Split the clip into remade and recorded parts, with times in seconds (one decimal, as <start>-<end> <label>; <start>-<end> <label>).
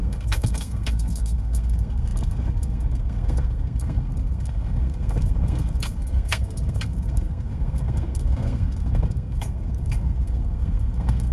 0.0-11.3 remade